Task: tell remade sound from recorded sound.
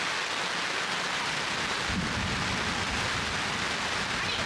recorded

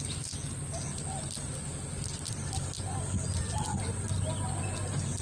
recorded